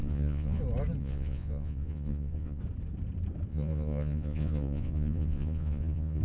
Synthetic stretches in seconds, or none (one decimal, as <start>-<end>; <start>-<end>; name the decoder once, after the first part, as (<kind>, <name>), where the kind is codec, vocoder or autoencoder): 0.0-0.6 (vocoder, Vocos); 1.0-2.6; 3.5-6.2